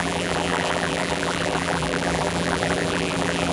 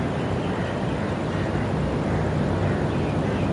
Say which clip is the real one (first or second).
second